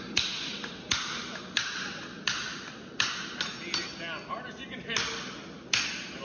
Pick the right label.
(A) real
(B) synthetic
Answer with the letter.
A